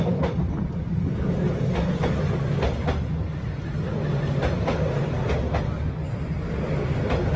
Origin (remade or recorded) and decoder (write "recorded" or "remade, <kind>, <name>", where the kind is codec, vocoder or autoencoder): recorded